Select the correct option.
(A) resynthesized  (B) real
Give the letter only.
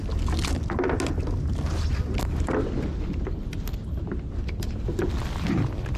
B